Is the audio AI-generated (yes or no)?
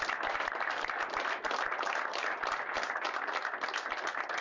no